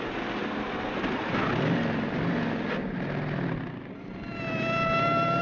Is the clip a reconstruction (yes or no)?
no